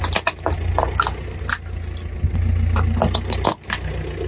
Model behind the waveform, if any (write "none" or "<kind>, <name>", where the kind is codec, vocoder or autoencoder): none